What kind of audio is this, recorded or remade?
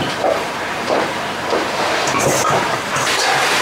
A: remade